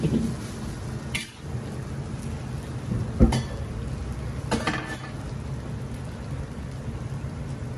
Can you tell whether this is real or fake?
real